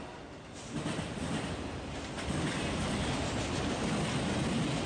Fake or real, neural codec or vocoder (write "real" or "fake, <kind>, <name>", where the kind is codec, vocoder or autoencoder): real